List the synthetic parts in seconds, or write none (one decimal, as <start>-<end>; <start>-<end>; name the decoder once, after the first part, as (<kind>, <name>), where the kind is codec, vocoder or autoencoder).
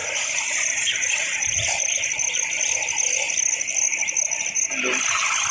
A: 0.0-2.7 (vocoder, BigVGAN v2)